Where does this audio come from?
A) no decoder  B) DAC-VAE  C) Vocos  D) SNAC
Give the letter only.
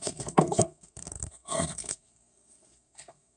D